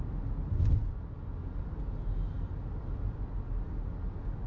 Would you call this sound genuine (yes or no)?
yes